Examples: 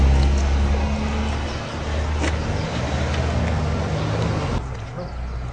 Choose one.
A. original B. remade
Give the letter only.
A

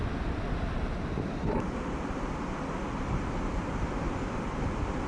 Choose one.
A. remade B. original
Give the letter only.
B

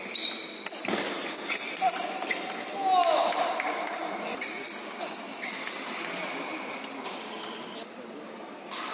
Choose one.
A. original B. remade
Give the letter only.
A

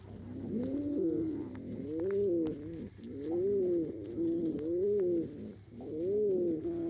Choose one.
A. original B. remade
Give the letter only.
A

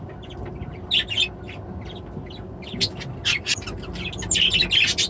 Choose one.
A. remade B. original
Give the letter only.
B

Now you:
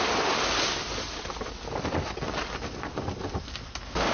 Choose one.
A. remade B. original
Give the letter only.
B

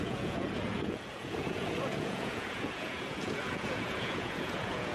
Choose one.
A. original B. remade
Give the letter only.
B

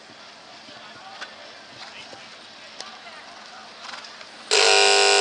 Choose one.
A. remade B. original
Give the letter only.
B